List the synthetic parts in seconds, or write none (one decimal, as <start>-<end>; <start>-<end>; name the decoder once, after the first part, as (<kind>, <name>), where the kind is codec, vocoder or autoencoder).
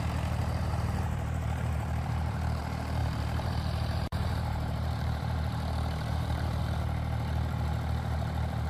0.4-2.6 (vocoder, BigVGAN v2); 3.0-6.6